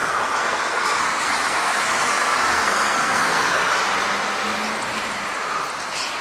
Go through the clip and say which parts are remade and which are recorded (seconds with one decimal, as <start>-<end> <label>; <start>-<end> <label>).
0.0-3.7 remade; 3.7-6.2 recorded